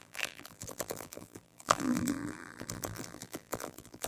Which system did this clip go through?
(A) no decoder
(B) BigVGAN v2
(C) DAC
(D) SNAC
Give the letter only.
B